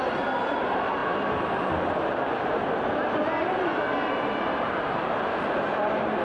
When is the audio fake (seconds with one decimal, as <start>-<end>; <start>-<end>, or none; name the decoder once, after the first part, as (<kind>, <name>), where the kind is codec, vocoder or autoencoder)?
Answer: none